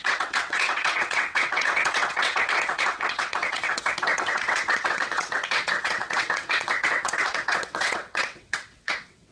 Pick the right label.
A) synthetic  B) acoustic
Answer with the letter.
A